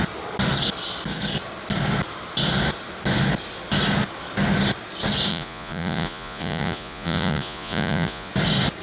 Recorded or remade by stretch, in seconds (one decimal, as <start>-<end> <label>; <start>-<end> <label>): 0.0-5.3 recorded; 5.3-8.3 remade; 8.3-8.8 recorded